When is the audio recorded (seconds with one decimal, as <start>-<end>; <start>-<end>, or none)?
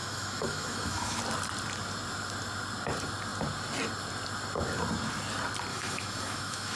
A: 1.2-5.7